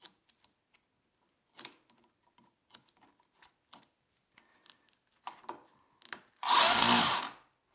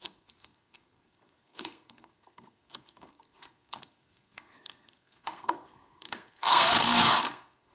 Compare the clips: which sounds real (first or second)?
first